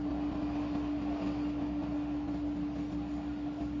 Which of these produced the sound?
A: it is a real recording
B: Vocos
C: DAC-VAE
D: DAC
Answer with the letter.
A